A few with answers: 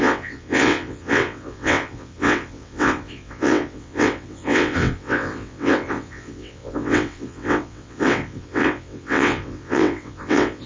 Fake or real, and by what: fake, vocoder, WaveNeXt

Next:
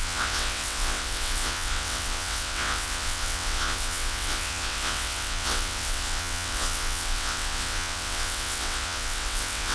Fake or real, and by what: fake, vocoder, WaveNeXt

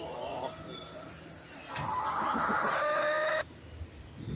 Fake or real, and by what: real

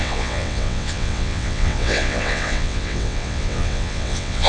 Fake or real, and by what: fake, vocoder, WaveNeXt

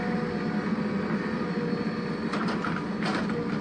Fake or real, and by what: real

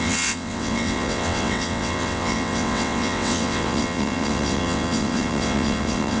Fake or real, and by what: fake, vocoder, WaveNeXt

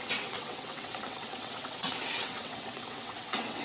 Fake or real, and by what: fake, vocoder, WaveNeXt